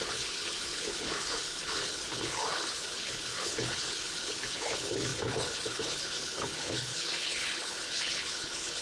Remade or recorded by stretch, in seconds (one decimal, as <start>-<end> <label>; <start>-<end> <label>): 0.0-8.8 remade